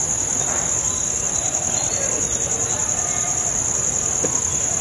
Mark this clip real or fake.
real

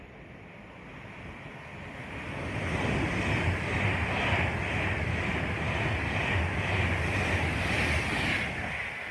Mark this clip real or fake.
real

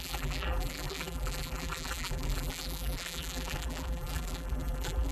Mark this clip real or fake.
fake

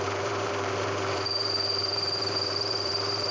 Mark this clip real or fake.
fake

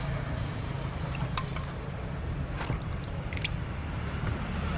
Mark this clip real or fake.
fake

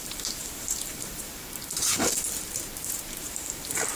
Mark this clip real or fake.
fake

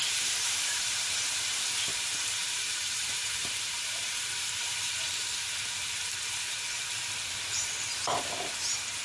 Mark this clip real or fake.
fake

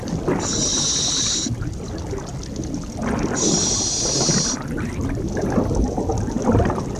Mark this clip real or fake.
real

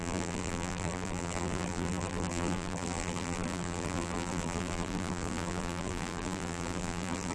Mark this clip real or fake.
fake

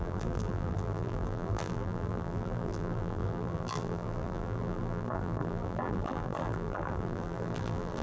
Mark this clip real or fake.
fake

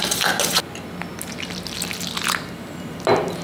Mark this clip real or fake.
real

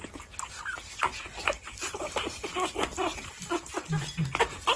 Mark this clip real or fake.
real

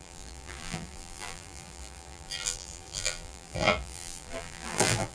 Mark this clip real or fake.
fake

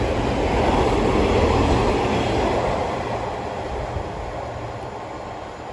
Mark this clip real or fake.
real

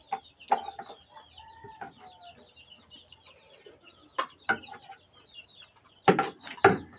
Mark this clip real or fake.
real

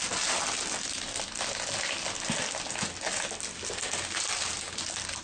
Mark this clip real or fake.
real